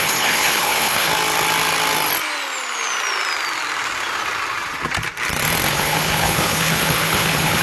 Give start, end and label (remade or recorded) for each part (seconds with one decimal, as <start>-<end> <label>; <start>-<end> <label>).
0.0-1.1 remade; 1.1-5.7 recorded; 5.7-7.6 remade